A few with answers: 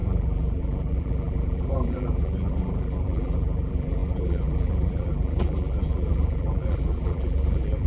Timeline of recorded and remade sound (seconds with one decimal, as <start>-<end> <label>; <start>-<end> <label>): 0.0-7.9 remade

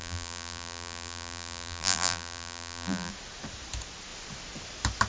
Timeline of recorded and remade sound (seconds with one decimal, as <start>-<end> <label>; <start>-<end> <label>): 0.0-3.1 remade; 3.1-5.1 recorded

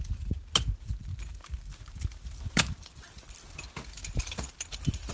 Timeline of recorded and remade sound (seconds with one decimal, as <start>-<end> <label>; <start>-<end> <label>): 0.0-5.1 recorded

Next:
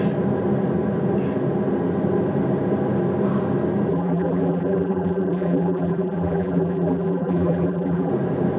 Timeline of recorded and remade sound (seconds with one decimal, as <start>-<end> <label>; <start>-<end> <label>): 0.0-3.9 recorded; 3.9-8.1 remade; 8.1-8.6 recorded